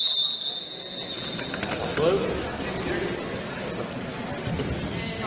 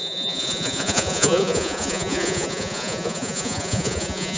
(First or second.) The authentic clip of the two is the first